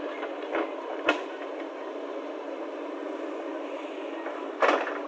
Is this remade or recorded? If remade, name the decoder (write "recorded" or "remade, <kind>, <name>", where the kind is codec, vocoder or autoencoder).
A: recorded